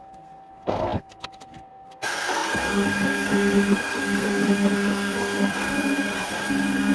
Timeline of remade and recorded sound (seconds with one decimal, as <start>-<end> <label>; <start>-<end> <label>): 0.0-6.9 remade

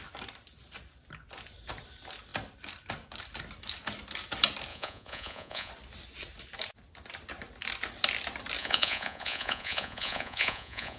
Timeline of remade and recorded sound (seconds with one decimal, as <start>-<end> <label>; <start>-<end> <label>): 0.0-4.7 recorded; 4.7-5.7 remade; 5.7-8.6 recorded; 8.6-11.0 remade

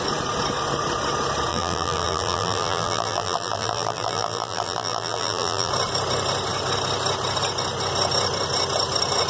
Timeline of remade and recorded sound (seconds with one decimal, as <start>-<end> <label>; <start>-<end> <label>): 0.0-1.5 recorded; 1.5-5.7 remade; 5.7-9.3 recorded

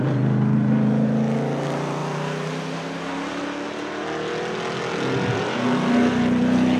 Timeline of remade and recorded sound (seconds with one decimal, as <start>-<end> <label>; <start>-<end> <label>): 0.0-6.8 recorded